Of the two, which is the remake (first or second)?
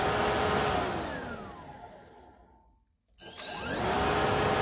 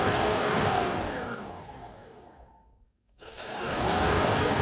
second